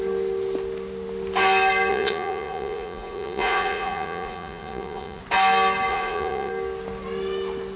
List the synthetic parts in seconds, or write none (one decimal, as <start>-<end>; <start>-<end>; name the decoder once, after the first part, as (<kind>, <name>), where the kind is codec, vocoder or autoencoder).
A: 1.9-5.2 (vocoder, Vocos); 5.9-6.5